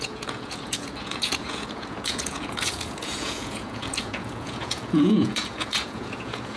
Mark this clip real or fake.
fake